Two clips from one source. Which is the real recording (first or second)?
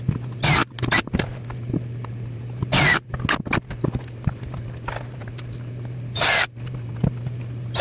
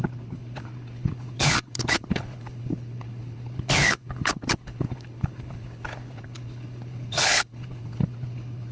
first